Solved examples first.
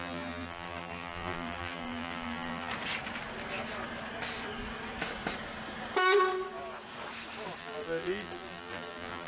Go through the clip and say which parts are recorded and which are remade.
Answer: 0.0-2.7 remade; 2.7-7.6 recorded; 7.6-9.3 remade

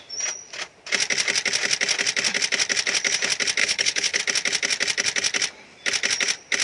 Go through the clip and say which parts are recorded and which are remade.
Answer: 0.0-3.6 recorded; 3.6-4.2 remade; 4.2-6.6 recorded

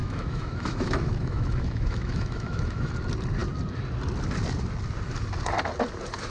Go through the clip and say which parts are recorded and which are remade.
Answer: 0.0-2.9 remade; 2.9-6.3 recorded

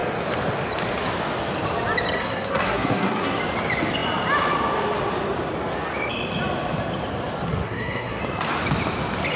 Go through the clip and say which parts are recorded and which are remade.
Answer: 0.0-2.2 recorded; 2.2-3.4 remade; 3.4-7.5 recorded; 7.5-8.2 remade; 8.2-9.4 recorded

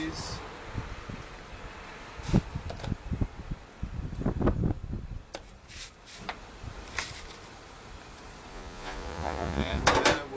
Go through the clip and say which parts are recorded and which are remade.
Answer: 0.0-8.5 recorded; 8.5-9.8 remade; 9.8-10.4 recorded

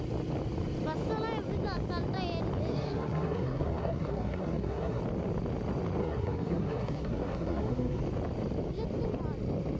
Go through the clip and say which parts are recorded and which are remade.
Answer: 0.0-2.7 recorded; 2.7-5.0 remade; 5.0-6.0 recorded; 6.0-8.0 remade; 8.0-9.8 recorded

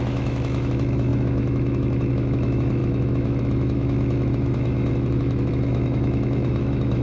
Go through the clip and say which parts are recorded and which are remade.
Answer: 0.0-7.0 remade

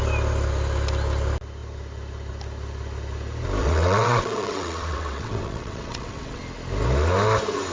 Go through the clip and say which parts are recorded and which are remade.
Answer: 0.0-3.6 recorded; 3.6-6.4 remade; 6.4-7.7 recorded